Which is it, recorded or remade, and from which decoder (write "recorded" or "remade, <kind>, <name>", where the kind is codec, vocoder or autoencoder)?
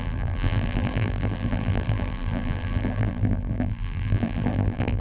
remade, vocoder, BigVGAN v2